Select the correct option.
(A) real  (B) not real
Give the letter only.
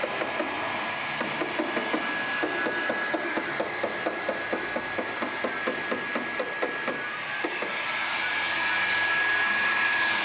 A